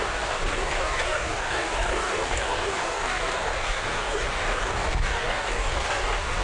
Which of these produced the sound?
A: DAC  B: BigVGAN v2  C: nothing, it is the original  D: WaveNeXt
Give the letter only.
A